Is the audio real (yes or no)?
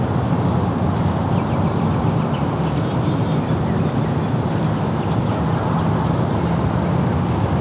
yes